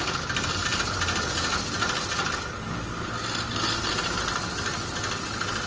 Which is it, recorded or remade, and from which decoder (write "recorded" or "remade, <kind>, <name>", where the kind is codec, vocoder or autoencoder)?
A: recorded